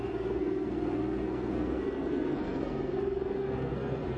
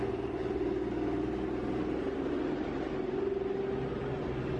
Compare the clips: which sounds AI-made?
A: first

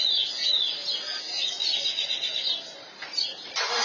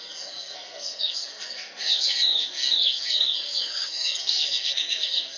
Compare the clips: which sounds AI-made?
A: second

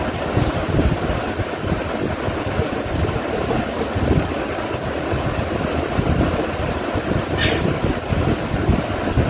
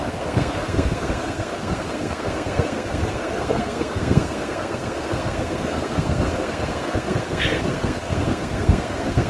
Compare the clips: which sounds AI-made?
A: second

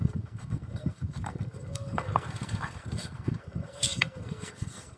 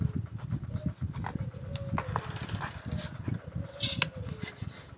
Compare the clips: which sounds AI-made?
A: first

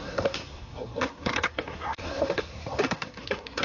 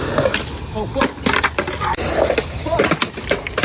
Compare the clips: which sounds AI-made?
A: first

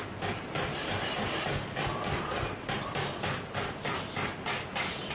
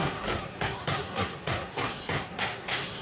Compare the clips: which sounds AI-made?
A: second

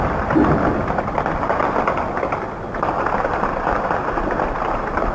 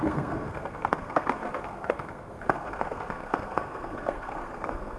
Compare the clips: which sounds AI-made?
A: second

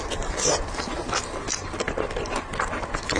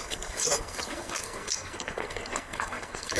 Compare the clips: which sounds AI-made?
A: second